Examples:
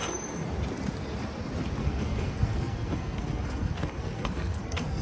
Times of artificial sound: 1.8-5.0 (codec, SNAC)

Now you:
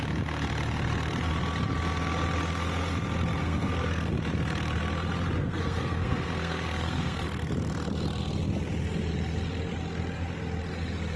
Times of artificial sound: 3.4-4.1 (codec, SNAC); 5.4-7.2

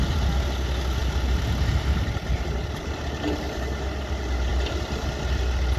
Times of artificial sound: none

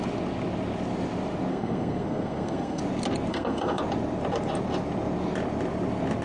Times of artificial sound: 1.5-2.8 (codec, SNAC); 3.3-3.8

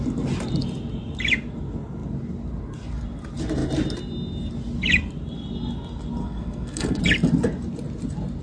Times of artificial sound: 6.2-7.0 (codec, SNAC)